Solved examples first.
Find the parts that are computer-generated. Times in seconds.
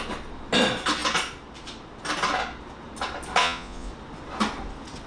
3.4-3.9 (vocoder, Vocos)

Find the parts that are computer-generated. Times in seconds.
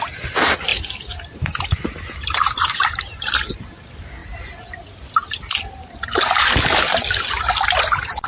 0.7-3.6 (vocoder, BigVGAN v2)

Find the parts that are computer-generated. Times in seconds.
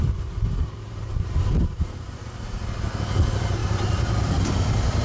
0.6-2.3 (vocoder, BigVGAN v2); 3.6-5.0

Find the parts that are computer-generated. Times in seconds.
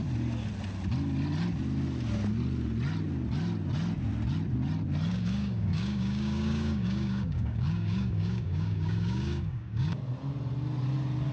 5.1-10.0 (codec, DAC)